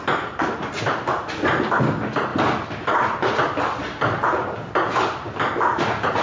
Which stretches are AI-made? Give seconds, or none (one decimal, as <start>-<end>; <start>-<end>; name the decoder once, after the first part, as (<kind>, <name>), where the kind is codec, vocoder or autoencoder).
none